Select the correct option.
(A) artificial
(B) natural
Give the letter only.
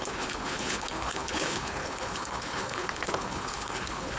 A